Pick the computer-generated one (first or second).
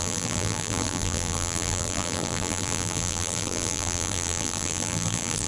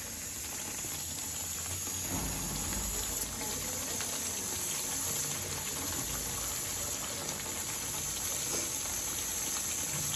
first